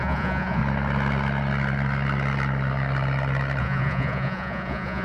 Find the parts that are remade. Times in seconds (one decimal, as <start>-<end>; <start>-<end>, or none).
0.0-0.6; 3.6-5.0